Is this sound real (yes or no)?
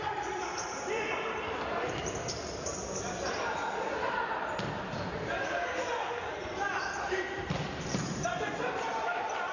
no